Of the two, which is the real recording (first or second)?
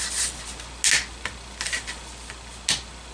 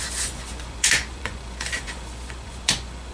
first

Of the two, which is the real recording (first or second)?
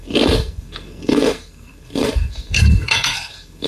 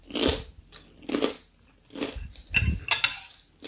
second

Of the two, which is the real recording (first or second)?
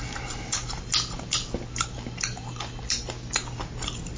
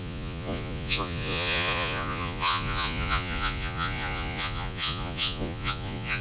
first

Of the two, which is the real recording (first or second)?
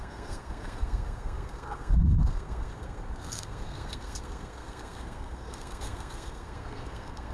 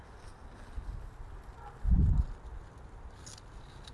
second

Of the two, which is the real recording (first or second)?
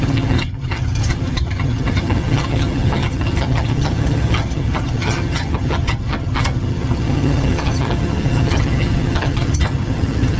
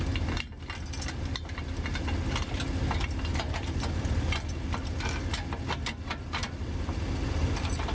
second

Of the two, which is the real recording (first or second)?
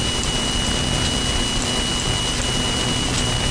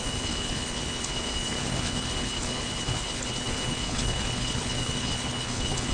first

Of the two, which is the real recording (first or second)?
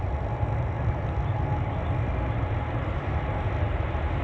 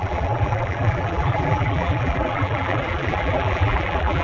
first